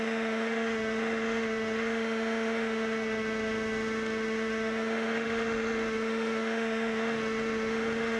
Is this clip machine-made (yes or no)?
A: yes